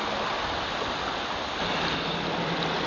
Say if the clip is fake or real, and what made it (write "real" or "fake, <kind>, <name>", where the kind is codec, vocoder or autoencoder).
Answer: real